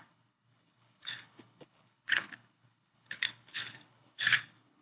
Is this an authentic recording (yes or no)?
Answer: no